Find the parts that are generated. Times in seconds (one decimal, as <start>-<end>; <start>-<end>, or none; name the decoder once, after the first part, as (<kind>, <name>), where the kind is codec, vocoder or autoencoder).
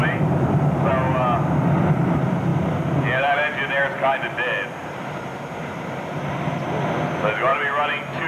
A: 0.0-0.9 (vocoder, BigVGAN v2); 4.8-6.3